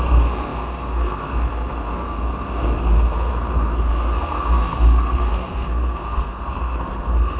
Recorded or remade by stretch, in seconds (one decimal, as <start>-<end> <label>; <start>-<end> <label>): 0.0-7.4 remade